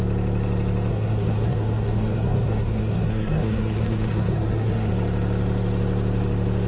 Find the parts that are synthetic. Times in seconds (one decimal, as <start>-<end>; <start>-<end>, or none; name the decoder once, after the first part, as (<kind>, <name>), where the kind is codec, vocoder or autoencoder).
0.9-4.9 (codec, SNAC)